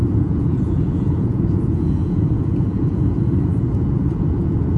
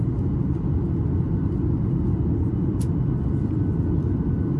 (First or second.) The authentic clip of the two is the second